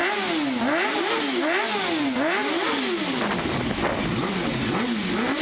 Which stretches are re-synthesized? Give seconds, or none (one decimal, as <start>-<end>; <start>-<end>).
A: none